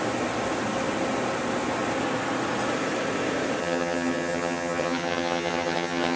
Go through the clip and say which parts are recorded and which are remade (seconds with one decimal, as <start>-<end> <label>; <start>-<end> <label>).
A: 0.0-3.6 recorded; 3.6-6.2 remade